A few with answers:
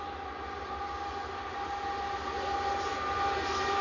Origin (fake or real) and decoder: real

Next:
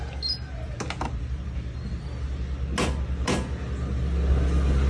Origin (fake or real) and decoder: real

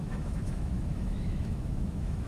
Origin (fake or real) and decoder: fake, autoencoder, DAC-VAE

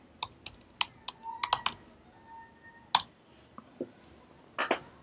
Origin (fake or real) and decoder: real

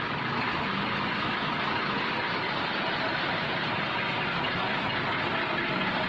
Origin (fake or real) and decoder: real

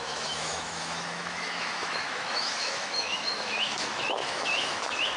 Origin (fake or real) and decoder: fake, autoencoder, DAC-VAE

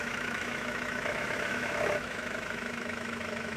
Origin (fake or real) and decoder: fake, autoencoder, DAC-VAE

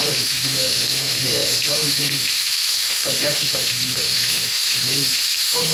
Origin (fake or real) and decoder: fake, autoencoder, DAC-VAE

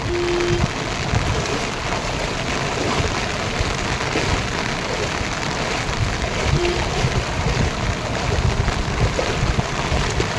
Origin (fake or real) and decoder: real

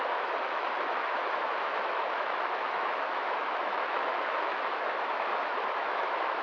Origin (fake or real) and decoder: fake, autoencoder, DAC-VAE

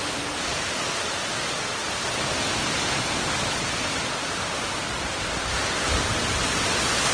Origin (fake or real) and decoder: real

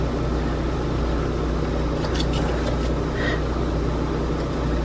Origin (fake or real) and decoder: real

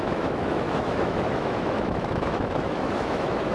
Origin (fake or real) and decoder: fake, autoencoder, DAC-VAE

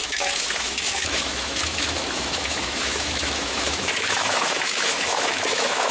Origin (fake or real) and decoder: fake, autoencoder, DAC-VAE